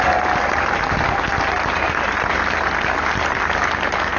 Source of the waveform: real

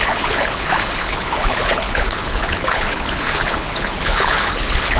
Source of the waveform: fake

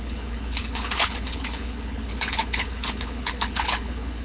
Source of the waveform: fake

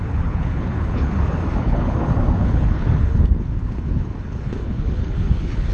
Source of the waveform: fake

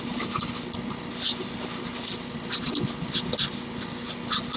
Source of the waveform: real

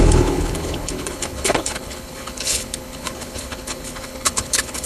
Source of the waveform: fake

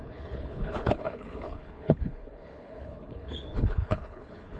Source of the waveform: fake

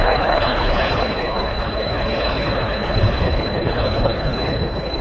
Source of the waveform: fake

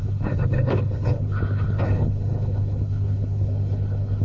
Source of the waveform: fake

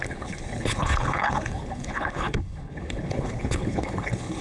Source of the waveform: fake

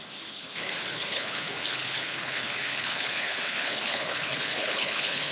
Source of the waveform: fake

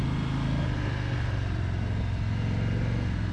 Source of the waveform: real